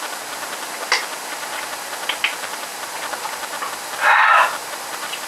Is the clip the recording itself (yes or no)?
yes